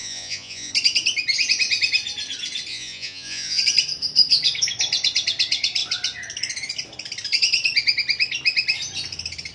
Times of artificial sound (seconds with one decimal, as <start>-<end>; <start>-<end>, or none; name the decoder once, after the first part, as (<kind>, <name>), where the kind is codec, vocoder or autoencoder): 0.0-0.7 (vocoder, Vocos); 2.7-3.6